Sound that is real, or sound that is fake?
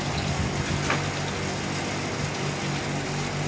real